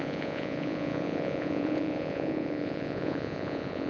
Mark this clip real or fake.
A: fake